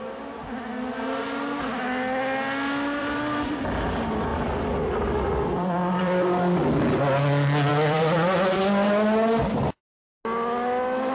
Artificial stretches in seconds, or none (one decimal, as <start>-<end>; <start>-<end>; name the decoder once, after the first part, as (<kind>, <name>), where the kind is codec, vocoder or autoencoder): 3.0-3.9 (vocoder, BigVGAN v2); 4.3-7.0; 7.7-8.6